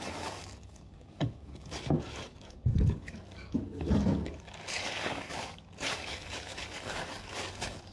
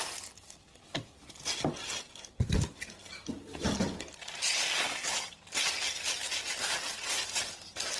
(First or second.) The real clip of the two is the second